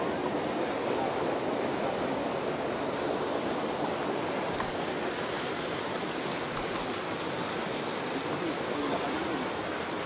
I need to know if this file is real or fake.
real